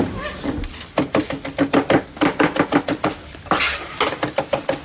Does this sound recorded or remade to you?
recorded